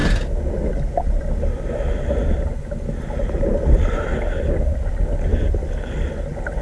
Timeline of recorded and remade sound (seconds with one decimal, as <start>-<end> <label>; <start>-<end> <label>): 0.0-6.6 recorded